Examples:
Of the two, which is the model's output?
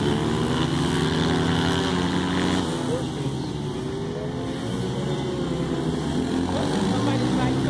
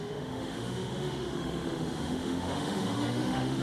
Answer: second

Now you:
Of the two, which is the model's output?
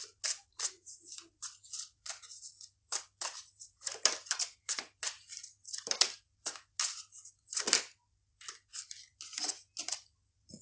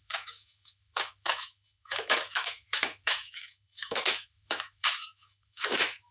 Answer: second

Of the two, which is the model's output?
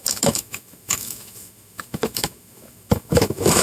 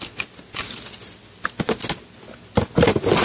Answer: first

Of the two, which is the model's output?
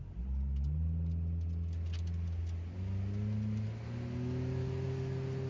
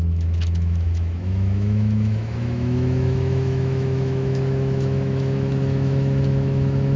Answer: second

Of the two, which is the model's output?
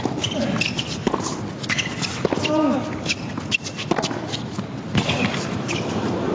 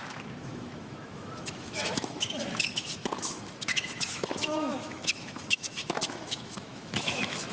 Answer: second